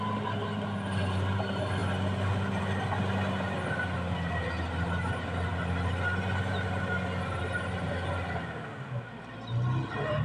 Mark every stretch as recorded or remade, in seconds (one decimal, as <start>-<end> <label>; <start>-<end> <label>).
0.0-10.2 recorded